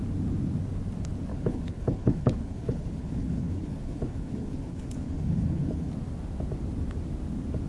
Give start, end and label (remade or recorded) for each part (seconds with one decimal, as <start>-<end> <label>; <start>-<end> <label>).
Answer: 0.0-1.3 recorded; 1.3-5.9 remade; 5.9-7.7 recorded